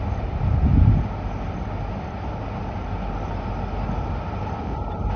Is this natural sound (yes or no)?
yes